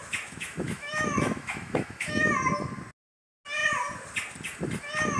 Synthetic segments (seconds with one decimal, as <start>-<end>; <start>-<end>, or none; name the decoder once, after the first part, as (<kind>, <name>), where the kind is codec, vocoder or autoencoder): 0.0-2.3 (autoencoder, DAC-VAE)